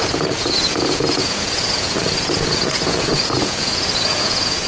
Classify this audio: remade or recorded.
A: remade